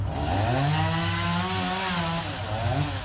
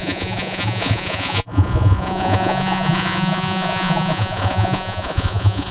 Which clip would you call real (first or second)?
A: first